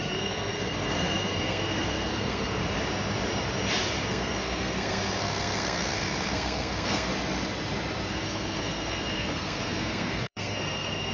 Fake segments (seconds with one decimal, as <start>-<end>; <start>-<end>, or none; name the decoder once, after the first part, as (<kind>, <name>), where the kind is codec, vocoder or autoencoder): 0.0-2.6 (codec, SNAC); 4.1-7.1; 8.1-11.1